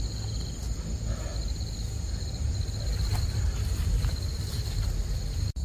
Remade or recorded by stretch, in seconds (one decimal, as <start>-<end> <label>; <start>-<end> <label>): 0.0-5.6 recorded